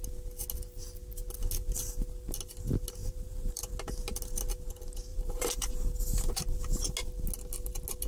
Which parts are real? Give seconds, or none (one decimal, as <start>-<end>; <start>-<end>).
0.0-3.0; 3.7-5.1; 5.9-8.1